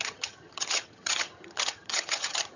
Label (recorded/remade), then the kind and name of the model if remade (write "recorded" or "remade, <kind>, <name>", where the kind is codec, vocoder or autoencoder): remade, vocoder, HiFi-GAN